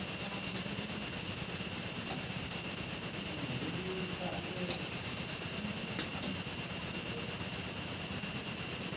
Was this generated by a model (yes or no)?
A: no